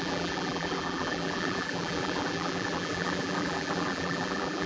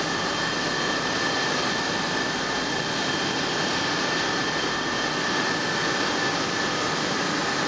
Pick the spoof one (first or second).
first